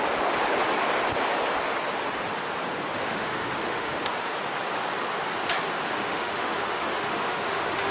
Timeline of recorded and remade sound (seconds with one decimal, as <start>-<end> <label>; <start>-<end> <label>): 0.0-2.9 recorded; 2.9-4.3 remade; 4.3-5.9 recorded; 5.9-7.9 remade